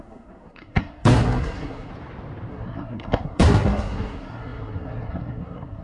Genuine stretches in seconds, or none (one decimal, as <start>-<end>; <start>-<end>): 1.9-2.5